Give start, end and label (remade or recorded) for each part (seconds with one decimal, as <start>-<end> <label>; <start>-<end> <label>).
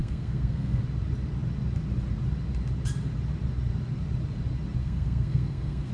0.0-0.8 remade; 0.8-4.8 recorded; 4.8-5.9 remade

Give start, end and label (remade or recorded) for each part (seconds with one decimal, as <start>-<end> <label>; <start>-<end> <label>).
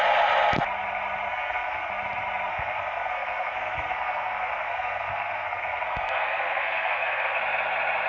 0.0-1.3 recorded; 1.3-1.9 remade; 1.9-2.5 recorded; 2.5-7.4 remade; 7.4-8.1 recorded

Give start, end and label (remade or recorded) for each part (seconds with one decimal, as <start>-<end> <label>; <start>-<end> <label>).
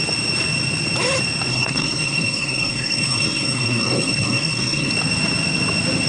0.0-1.5 recorded; 1.5-4.9 remade; 4.9-6.1 recorded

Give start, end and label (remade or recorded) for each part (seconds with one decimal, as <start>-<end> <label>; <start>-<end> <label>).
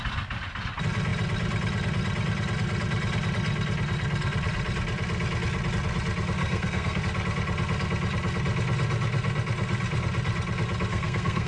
0.0-6.4 recorded; 6.4-7.0 remade; 7.0-10.9 recorded; 10.9-11.5 remade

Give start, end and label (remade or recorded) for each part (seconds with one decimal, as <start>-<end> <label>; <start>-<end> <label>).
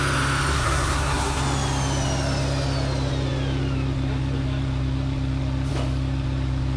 0.0-0.5 recorded; 0.5-1.4 remade; 1.4-6.8 recorded